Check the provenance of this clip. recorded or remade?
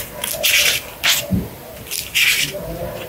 recorded